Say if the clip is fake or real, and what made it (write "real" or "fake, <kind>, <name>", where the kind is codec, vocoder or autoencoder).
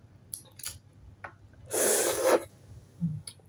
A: real